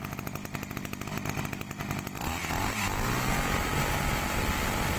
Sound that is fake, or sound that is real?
real